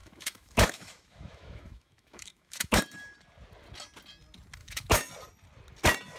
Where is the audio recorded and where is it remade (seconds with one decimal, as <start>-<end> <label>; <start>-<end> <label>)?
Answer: 0.0-2.8 remade; 2.8-4.6 recorded; 4.6-5.1 remade; 5.1-6.2 recorded